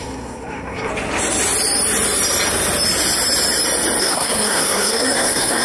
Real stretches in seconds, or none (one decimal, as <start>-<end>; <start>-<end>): 0.9-4.0